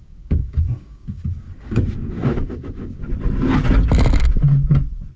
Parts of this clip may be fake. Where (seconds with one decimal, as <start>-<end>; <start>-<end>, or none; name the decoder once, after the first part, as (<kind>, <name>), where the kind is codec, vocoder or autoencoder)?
0.0-3.1 (codec, DAC)